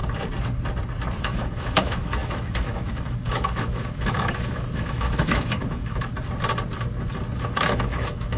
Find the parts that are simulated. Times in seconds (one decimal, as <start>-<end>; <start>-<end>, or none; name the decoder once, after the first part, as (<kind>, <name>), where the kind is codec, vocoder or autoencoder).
1.2-6.1 (autoencoder, DAC-VAE); 7.4-8.4